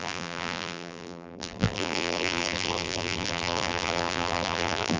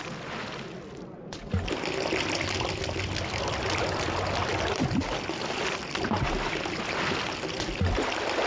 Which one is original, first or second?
second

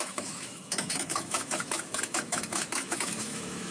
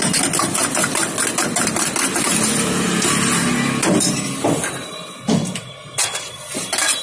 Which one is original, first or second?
second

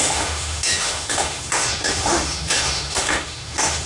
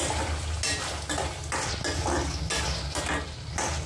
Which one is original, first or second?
second